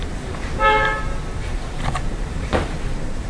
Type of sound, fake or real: fake